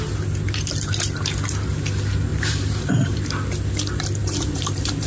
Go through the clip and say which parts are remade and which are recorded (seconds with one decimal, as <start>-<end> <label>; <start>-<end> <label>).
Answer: 0.0-2.3 recorded; 2.3-3.2 remade; 3.2-4.2 recorded; 4.2-5.1 remade